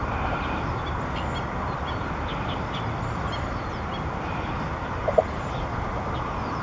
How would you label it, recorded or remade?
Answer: recorded